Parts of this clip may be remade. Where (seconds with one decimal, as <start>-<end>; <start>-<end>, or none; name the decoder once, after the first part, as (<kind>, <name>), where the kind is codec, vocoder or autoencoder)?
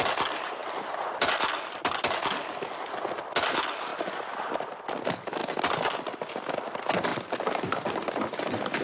none